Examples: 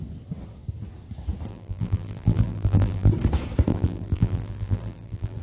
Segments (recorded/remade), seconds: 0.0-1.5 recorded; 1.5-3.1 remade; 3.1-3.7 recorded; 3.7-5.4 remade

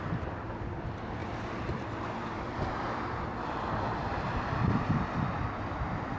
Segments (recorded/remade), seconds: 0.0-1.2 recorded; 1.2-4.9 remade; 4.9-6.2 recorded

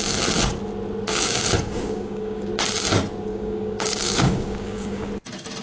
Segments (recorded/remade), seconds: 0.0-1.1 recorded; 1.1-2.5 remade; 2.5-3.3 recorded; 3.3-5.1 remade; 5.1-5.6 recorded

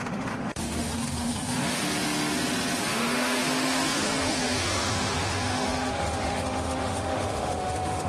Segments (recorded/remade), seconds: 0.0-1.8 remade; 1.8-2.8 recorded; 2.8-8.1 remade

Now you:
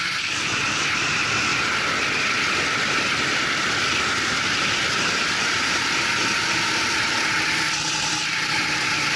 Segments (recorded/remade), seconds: 0.0-9.2 remade

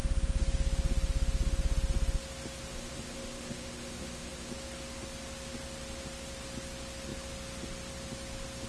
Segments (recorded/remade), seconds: 0.0-2.7 recorded; 2.7-4.5 remade; 4.5-8.7 recorded

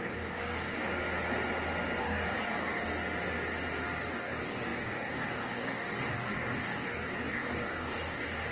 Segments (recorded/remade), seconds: 0.0-1.0 remade; 1.0-2.0 recorded; 2.0-2.9 remade; 2.9-4.1 recorded; 4.1-8.5 remade